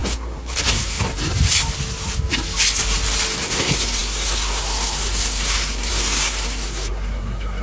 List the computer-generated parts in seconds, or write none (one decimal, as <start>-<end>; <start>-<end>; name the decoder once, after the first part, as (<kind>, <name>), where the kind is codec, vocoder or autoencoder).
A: 0.0-1.1 (codec, SNAC); 3.4-7.6